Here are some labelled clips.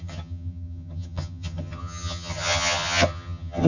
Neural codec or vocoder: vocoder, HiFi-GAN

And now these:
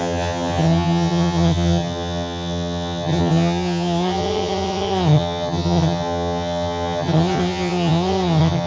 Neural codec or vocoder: vocoder, HiFi-GAN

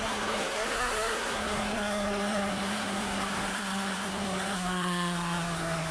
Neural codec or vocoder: codec, SNAC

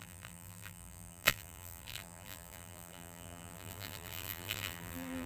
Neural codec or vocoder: vocoder, BigVGAN v2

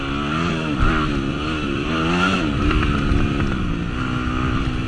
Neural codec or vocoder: none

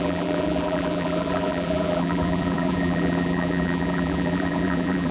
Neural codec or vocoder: vocoder, BigVGAN v2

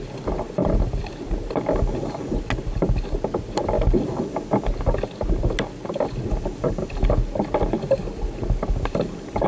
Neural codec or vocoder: none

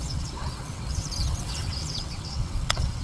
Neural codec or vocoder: vocoder, WaveNeXt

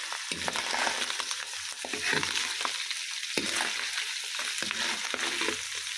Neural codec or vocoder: none